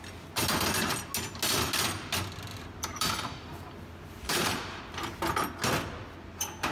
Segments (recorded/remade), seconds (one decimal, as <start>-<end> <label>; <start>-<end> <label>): 0.0-2.5 recorded; 2.5-4.8 remade; 4.8-6.7 recorded